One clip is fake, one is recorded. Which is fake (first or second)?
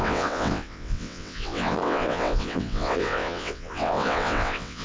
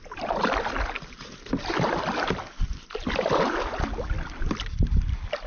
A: first